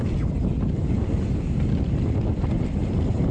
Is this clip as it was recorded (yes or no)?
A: yes